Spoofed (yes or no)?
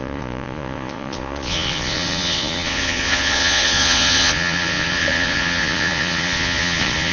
yes